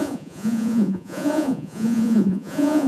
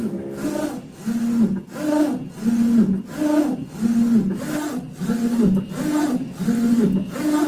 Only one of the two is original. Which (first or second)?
second